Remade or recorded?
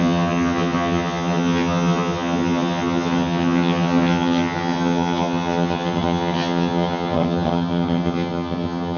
remade